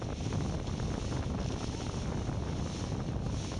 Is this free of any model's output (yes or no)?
yes